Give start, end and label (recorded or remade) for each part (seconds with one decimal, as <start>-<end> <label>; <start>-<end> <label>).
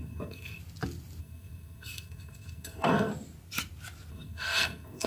0.0-0.6 remade; 0.6-1.2 recorded; 1.2-3.1 remade; 3.1-4.1 recorded; 4.1-5.1 remade